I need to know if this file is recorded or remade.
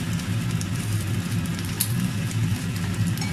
recorded